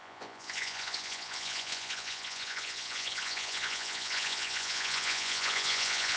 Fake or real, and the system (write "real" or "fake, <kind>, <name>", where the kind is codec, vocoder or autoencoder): fake, vocoder, Vocos